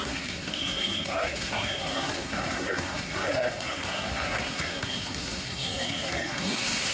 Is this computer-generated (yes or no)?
yes